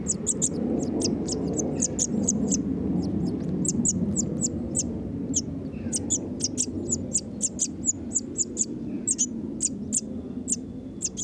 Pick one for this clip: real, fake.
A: real